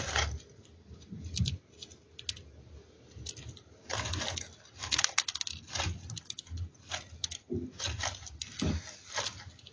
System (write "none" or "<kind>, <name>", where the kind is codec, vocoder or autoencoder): none